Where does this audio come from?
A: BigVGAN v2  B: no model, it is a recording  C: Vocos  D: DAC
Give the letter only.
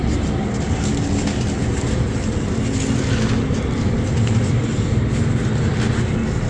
B